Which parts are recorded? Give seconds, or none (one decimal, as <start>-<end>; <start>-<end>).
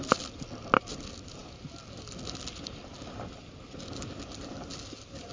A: 0.0-5.3